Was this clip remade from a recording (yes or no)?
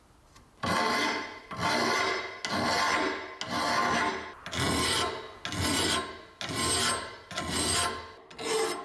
no